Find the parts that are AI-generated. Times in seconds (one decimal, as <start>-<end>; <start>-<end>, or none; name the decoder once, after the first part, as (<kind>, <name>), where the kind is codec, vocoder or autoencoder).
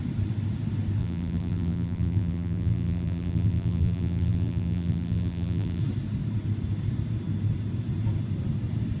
1.0-5.8 (vocoder, BigVGAN v2)